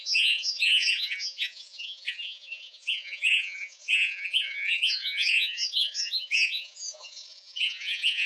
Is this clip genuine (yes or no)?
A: no